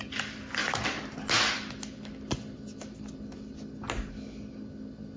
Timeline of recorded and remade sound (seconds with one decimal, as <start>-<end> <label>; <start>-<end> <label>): 0.0-5.2 recorded